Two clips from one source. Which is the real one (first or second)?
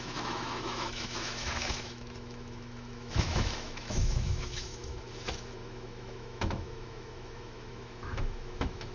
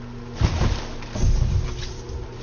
second